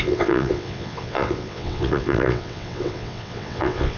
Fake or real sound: fake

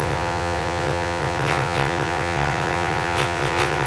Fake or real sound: fake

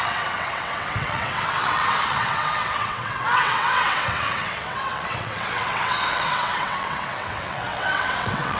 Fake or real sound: fake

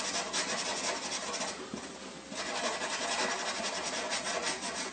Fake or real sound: real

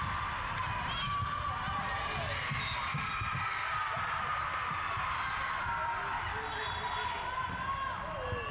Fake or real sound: real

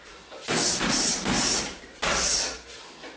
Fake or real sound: real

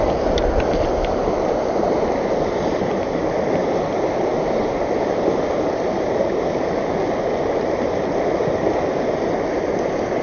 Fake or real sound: real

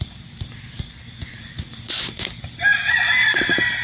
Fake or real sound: real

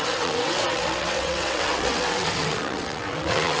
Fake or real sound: fake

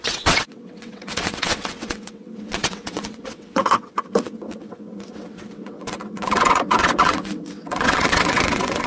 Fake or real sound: fake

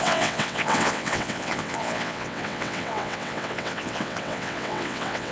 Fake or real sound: fake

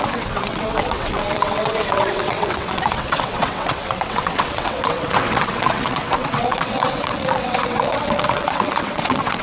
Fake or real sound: fake